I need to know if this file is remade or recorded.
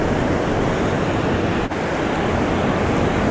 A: recorded